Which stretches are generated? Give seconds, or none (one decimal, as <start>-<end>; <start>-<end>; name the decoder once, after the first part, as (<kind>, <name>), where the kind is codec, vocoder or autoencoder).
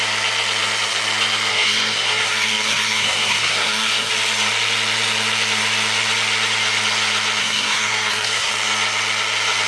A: 1.5-4.1 (codec, SNAC); 7.4-8.5